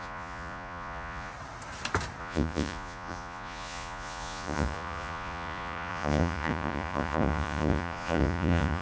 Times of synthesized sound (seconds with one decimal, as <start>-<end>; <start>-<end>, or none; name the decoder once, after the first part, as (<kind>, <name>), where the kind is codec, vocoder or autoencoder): 0.0-1.3 (vocoder, Vocos); 2.2-8.8